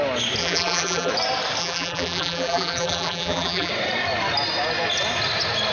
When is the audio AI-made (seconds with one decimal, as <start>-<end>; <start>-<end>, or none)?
0.4-1.1; 1.6-3.7